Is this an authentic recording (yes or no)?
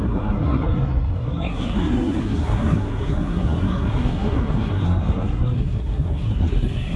no